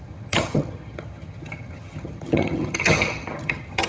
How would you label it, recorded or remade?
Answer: remade